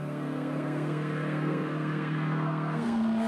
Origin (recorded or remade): remade